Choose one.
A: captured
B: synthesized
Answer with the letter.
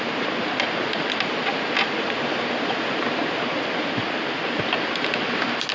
A